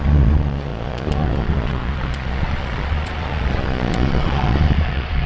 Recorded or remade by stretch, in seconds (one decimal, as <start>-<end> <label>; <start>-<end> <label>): 0.0-5.3 remade

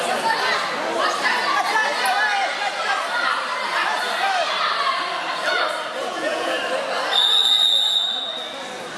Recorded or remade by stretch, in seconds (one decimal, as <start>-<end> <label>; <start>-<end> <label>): 0.0-6.0 recorded; 6.0-6.6 remade; 6.6-9.0 recorded